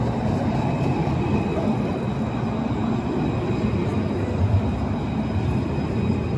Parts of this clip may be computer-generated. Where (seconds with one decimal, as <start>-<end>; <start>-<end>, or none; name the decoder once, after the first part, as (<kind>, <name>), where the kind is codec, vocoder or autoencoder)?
none